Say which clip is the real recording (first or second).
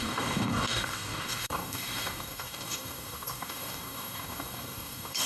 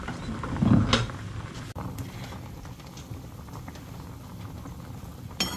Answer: second